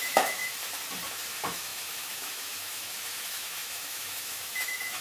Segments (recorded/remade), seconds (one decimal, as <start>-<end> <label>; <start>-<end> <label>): 0.0-0.4 remade; 0.4-1.1 recorded; 1.1-5.0 remade